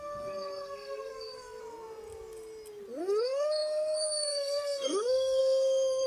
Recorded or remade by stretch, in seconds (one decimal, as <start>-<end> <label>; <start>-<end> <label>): 0.0-1.6 remade; 1.6-3.0 recorded; 3.0-6.1 remade

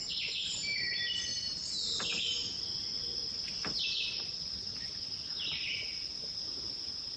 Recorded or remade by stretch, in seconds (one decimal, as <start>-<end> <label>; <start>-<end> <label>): 0.0-7.2 recorded

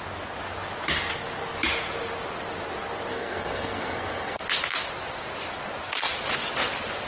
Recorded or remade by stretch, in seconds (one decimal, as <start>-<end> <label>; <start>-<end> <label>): 0.0-3.1 recorded; 3.1-4.4 remade; 4.4-7.1 recorded

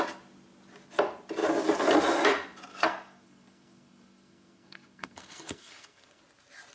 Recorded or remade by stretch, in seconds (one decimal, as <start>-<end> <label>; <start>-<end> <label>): 0.0-2.7 recorded; 2.7-6.2 remade; 6.2-6.7 recorded

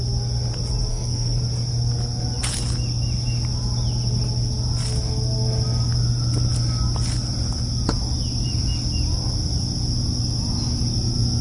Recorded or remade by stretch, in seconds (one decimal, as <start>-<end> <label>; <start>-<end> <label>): 0.0-0.9 recorded; 0.9-1.4 remade; 1.4-11.4 recorded

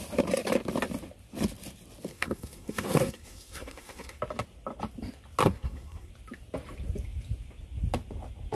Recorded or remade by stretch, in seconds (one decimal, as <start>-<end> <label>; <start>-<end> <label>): 0.0-2.1 recorded; 2.1-4.2 remade; 4.2-5.4 recorded; 5.4-6.1 remade; 6.1-8.6 recorded